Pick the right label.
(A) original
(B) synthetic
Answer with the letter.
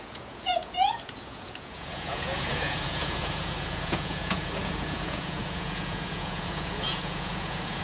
B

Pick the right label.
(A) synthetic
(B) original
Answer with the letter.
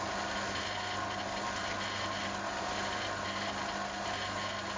B